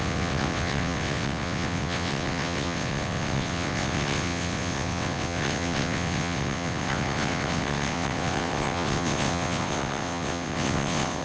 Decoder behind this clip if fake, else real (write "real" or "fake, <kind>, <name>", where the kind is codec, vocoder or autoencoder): fake, vocoder, WaveNeXt